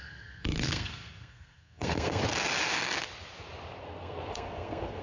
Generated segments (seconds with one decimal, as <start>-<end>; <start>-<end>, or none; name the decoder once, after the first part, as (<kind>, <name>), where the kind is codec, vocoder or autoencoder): 0.0-2.2 (codec, SNAC); 3.8-5.0